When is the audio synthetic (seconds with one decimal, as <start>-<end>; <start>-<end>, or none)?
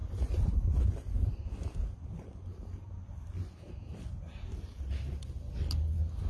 0.0-1.4